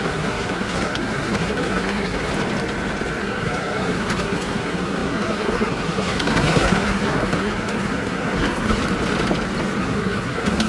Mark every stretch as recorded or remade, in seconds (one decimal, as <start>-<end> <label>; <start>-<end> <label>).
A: 0.0-2.3 remade; 2.3-3.2 recorded; 3.2-8.8 remade; 8.8-9.8 recorded; 9.8-10.7 remade